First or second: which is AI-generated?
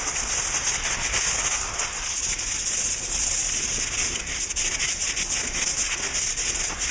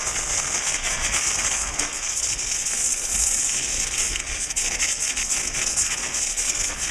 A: second